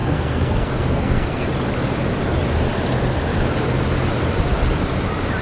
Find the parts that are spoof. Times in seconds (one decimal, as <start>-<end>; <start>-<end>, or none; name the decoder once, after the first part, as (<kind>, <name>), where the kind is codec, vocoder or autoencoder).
0.0-1.5 (codec, SNAC)